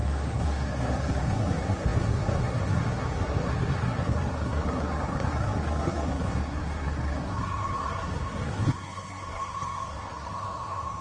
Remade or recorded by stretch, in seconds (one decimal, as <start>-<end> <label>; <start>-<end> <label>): 0.0-11.0 remade